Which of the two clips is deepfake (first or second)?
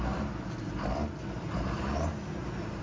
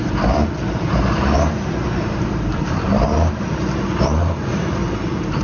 second